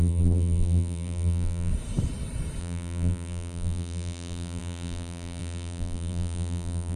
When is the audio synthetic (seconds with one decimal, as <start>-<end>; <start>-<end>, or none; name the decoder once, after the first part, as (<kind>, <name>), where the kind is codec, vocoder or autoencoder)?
0.0-1.7 (vocoder, BigVGAN v2); 2.6-7.0

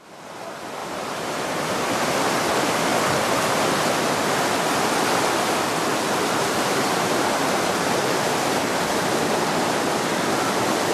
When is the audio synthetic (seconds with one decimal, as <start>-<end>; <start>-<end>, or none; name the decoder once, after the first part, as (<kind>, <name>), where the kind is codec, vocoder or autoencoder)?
0.8-2.1 (vocoder, BigVGAN v2); 5.9-8.6

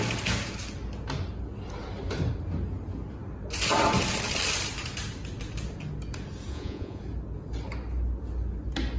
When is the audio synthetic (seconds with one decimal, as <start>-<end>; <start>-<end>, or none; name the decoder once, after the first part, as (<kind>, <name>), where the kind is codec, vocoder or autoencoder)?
6.5-7.0 (vocoder, Vocos)